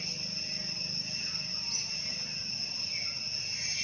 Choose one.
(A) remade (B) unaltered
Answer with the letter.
B